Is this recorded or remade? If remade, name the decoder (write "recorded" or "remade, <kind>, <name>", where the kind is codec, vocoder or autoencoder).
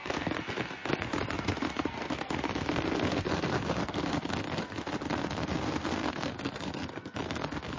remade, codec, SNAC